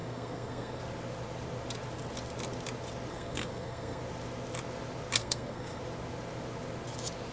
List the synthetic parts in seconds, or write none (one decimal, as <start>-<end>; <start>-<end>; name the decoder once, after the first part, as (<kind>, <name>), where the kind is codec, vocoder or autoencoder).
0.0-0.8 (codec, SNAC); 3.1-4.0; 5.2-5.8